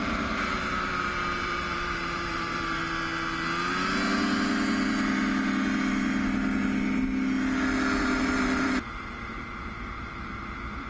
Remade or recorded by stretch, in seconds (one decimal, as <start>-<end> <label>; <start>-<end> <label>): 0.0-2.8 remade; 2.8-8.0 recorded; 8.0-10.9 remade